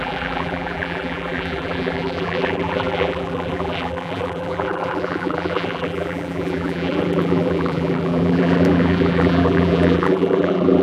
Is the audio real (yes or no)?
no